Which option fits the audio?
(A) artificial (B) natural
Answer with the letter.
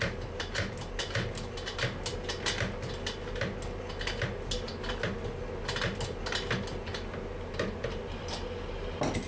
B